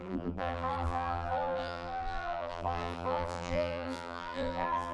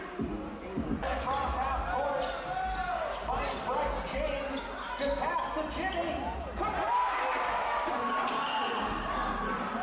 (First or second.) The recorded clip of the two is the second